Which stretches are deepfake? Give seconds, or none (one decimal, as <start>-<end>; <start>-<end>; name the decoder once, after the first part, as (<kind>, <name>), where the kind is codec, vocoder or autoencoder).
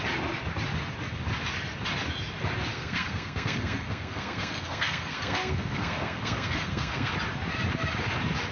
2.7-7.1 (codec, SNAC)